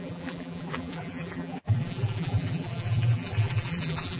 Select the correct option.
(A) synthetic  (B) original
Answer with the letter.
A